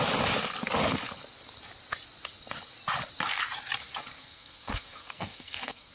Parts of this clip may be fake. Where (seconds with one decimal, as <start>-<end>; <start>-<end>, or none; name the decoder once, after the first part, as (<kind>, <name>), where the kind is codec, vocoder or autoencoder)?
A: 4.2-5.9 (codec, SNAC)